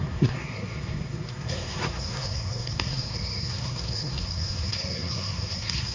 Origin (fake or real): fake